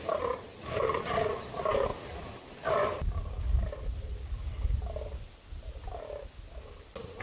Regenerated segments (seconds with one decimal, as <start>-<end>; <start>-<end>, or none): none